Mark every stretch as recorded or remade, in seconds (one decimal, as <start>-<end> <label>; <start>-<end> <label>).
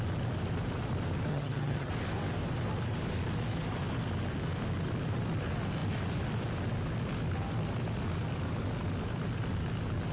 0.0-1.3 recorded; 1.3-1.9 remade; 1.9-10.1 recorded